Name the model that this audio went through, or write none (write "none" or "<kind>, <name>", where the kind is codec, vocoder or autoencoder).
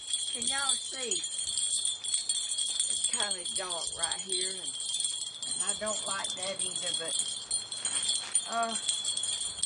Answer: none